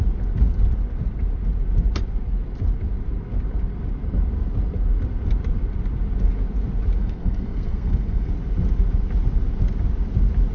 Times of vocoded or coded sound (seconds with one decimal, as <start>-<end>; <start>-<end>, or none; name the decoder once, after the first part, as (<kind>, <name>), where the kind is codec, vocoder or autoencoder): 7.0-8.3 (codec, SNAC)